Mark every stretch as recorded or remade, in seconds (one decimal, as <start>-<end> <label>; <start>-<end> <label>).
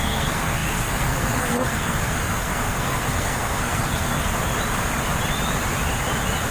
0.0-4.3 remade; 4.3-6.5 recorded